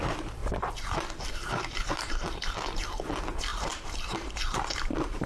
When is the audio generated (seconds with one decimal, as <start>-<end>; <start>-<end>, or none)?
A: 0.4-2.3; 3.5-5.3